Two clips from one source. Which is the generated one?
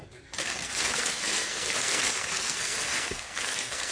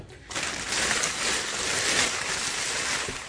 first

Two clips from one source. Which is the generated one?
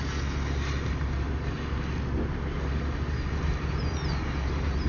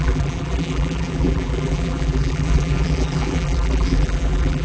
second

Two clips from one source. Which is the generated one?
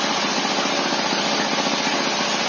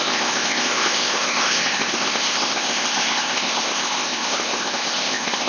second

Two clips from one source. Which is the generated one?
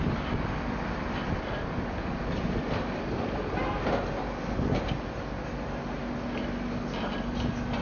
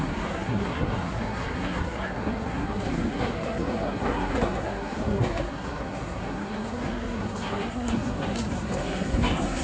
second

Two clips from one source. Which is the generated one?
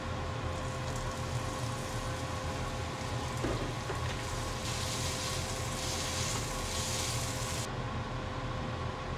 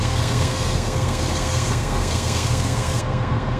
second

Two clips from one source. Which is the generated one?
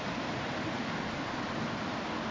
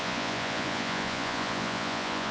second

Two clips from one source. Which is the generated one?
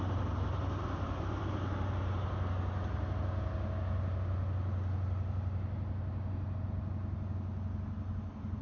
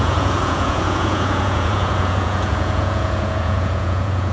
second